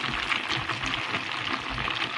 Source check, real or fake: real